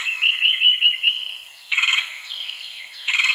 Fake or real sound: fake